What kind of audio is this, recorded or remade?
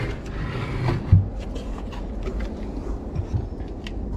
recorded